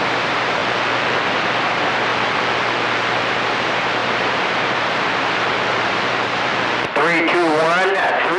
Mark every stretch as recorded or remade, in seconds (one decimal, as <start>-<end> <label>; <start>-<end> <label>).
0.0-0.6 remade; 0.6-1.3 recorded; 1.3-2.1 remade; 2.1-3.3 recorded; 3.3-6.5 remade; 6.5-7.9 recorded; 7.9-8.4 remade